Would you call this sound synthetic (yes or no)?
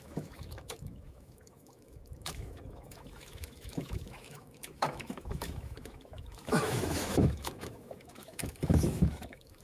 yes